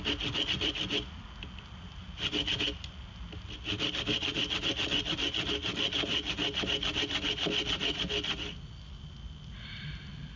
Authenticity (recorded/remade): recorded